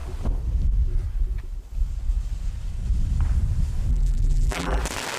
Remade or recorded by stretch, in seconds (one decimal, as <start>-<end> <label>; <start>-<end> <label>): 0.0-3.9 recorded; 3.9-4.8 remade; 4.8-5.2 recorded